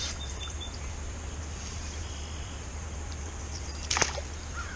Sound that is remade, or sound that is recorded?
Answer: remade